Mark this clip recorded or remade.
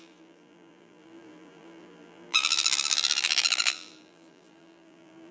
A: remade